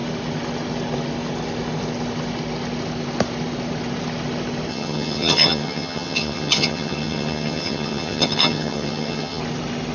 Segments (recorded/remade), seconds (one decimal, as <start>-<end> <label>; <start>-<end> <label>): 0.0-4.7 recorded; 4.7-9.4 remade; 9.4-9.9 recorded